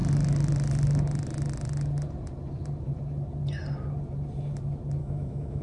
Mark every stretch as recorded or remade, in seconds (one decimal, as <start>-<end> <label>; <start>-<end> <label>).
0.0-5.0 recorded; 5.0-5.6 remade